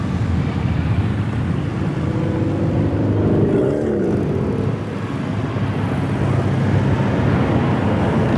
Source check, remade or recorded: recorded